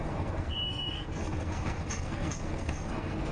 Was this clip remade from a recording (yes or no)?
yes